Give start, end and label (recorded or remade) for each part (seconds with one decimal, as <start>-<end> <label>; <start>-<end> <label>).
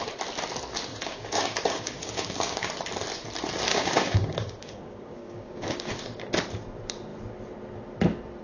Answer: 0.0-0.9 recorded; 0.9-2.7 remade; 2.7-3.7 recorded; 3.7-6.2 remade; 6.2-8.4 recorded